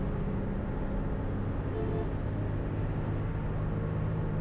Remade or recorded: recorded